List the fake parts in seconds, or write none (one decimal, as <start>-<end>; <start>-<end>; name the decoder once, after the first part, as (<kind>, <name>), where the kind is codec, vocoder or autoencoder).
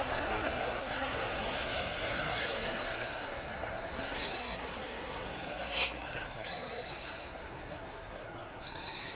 0.0-9.2 (codec, SNAC)